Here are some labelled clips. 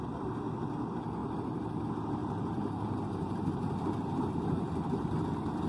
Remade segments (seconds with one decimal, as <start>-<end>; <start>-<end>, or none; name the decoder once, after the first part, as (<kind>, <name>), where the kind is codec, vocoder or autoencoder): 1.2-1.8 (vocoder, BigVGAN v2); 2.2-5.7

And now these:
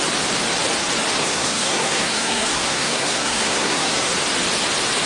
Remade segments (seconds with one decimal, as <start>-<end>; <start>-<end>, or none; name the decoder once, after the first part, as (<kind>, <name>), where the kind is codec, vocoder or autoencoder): 1.2-4.1 (codec, SNAC)

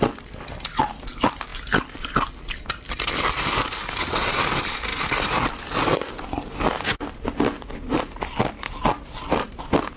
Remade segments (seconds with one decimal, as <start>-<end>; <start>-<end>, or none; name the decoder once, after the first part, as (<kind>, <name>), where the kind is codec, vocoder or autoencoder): none

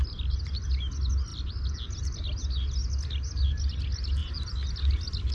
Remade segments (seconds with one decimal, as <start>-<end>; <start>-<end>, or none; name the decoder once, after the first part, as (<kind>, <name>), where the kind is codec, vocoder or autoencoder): none

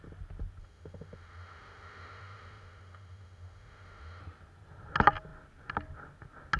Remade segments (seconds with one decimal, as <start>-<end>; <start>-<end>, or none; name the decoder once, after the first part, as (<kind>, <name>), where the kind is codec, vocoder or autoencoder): 0.6-4.2 (autoencoder, DAC-VAE)

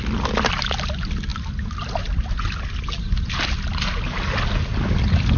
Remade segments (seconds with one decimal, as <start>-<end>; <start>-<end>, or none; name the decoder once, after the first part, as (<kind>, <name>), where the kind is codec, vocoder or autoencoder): none

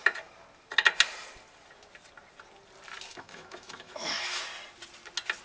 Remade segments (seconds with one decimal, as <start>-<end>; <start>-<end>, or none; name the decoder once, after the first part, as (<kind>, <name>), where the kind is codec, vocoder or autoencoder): 3.1-4.4 (autoencoder, DAC-VAE)